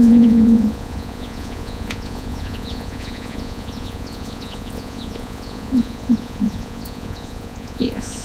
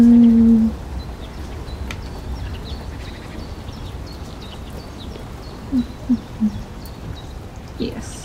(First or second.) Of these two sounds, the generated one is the first